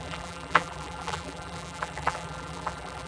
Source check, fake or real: fake